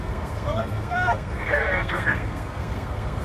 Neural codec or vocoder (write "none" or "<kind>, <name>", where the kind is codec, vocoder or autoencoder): codec, SNAC